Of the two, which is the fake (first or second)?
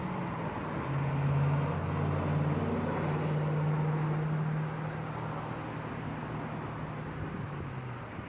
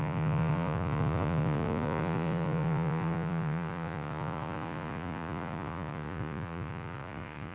second